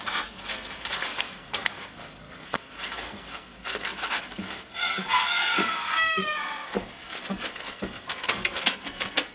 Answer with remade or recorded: remade